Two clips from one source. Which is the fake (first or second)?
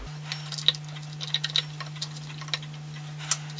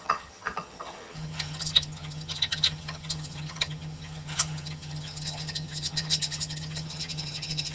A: second